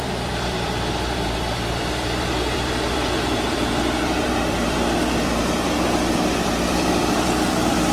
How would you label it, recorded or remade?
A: remade